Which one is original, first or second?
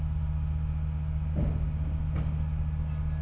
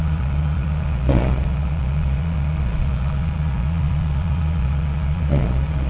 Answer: first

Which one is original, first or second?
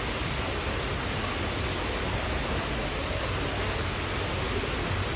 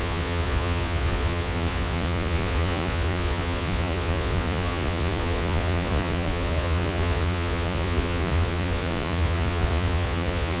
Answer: first